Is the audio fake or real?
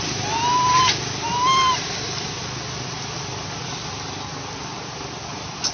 real